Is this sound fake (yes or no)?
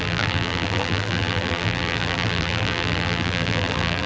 yes